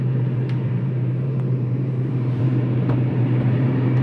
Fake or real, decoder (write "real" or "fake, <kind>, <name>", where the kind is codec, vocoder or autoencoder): fake, vocoder, BigVGAN v2